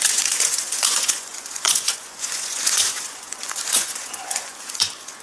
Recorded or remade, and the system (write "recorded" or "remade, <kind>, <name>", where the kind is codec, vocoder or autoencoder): remade, vocoder, Vocos